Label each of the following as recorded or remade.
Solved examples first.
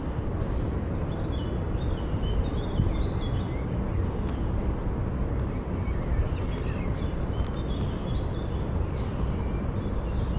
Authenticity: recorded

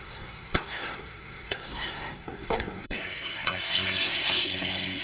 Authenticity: remade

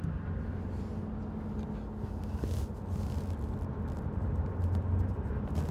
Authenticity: recorded